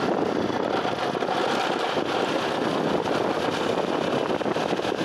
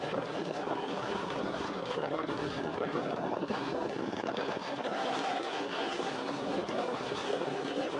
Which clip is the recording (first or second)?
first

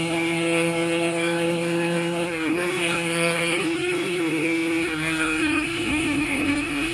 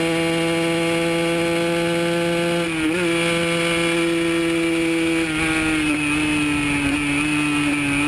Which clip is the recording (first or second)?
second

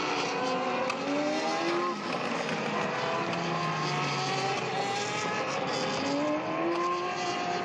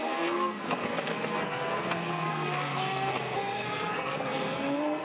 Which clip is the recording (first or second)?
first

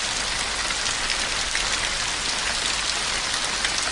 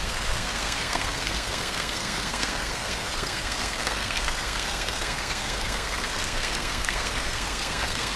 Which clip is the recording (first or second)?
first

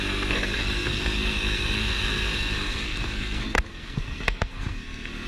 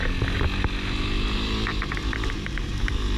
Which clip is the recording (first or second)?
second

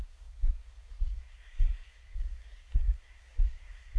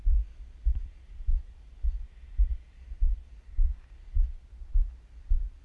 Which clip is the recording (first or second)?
second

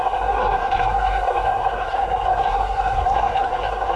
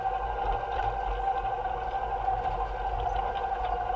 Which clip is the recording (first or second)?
second